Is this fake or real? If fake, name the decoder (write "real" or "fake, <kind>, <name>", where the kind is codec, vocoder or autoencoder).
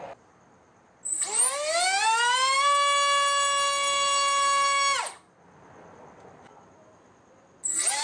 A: real